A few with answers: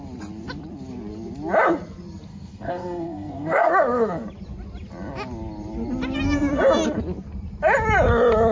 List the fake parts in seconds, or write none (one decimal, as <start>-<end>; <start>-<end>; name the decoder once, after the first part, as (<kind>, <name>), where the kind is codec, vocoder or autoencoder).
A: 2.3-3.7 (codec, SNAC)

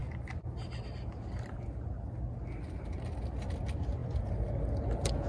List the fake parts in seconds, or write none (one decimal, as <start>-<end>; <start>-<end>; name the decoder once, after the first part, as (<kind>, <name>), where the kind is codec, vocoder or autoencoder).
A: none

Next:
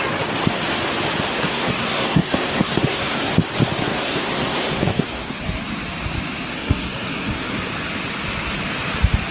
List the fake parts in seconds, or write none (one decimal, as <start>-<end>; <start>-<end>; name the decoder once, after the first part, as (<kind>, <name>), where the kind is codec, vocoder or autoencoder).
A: 1.3-3.3 (codec, SNAC); 3.8-5.4; 6.5-7.7